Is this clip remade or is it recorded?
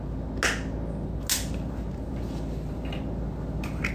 recorded